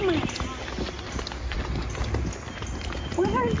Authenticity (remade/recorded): recorded